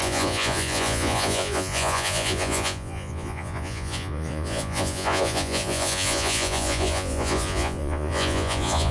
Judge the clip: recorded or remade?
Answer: remade